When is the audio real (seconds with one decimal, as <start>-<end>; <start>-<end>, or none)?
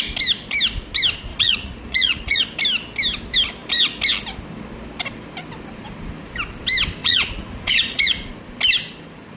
0.0-1.3; 2.4-7.0; 8.3-9.4